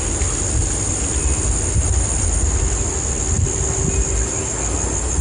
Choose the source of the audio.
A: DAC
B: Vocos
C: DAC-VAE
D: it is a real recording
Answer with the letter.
D